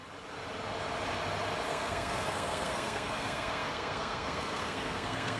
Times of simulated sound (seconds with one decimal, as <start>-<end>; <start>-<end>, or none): 1.7-5.4